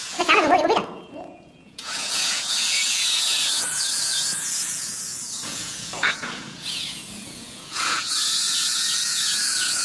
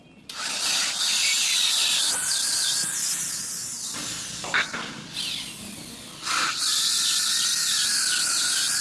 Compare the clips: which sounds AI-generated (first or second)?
first